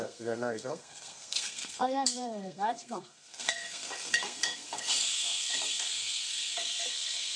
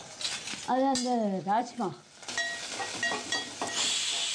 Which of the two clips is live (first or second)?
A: second